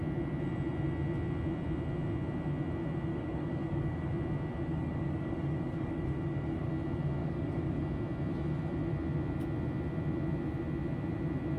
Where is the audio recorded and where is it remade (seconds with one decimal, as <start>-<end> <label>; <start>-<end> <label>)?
0.0-3.1 recorded; 3.1-4.1 remade; 4.1-4.7 recorded; 4.7-6.7 remade; 6.7-7.2 recorded; 7.2-7.8 remade; 7.8-11.6 recorded